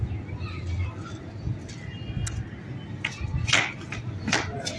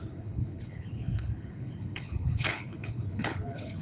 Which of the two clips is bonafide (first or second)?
first